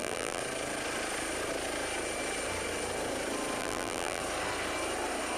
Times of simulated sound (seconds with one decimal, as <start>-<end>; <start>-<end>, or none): 0.0-0.4; 3.6-4.2